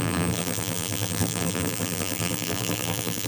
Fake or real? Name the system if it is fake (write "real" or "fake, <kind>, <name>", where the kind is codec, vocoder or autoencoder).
fake, vocoder, BigVGAN v2